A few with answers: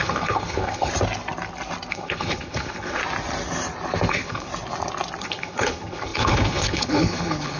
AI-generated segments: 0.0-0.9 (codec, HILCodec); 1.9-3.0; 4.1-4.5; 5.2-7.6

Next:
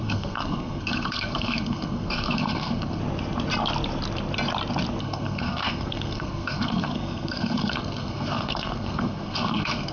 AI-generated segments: 0.0-3.0 (codec, SNAC); 5.0-9.9